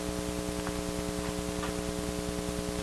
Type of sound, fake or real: real